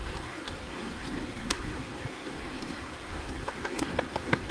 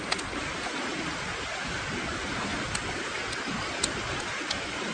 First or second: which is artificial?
first